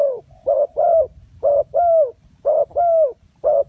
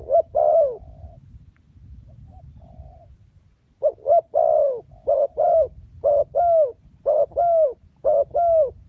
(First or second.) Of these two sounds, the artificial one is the first